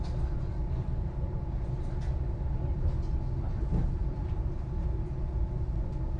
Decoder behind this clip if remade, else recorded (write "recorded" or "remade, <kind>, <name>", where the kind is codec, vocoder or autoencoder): recorded